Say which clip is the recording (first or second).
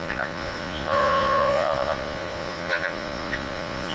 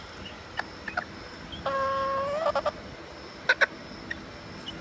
second